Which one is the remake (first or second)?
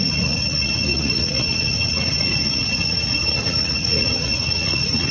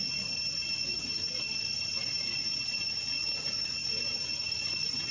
first